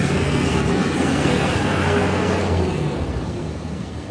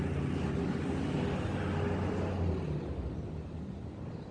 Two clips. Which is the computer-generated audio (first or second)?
first